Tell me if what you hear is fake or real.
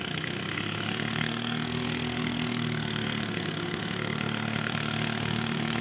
fake